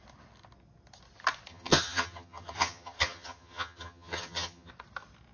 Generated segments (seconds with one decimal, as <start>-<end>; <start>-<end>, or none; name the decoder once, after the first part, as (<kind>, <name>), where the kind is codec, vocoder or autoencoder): 1.5-4.7 (vocoder, HiFi-GAN)